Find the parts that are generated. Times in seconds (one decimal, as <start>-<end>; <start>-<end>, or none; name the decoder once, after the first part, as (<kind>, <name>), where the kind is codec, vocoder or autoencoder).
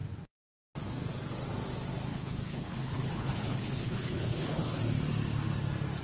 2.1-4.8 (codec, HILCodec)